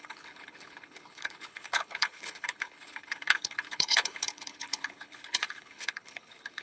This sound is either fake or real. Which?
fake